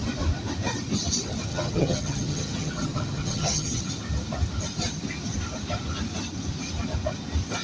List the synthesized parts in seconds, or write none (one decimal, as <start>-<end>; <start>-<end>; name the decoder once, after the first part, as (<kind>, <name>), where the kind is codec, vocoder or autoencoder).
1.5-3.8 (vocoder, HiFi-GAN)